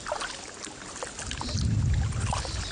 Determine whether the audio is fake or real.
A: real